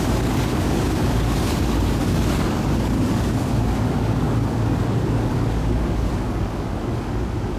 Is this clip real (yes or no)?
no